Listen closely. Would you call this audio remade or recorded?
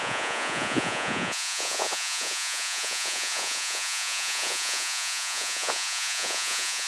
remade